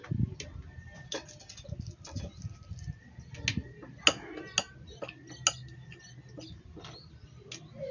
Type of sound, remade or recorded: recorded